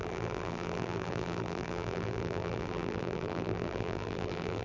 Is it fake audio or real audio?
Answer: fake